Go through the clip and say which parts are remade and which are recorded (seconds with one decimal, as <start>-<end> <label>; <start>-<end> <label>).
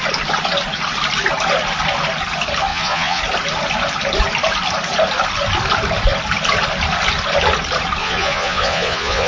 0.0-2.7 recorded; 2.7-3.2 remade; 3.2-8.0 recorded; 8.0-9.3 remade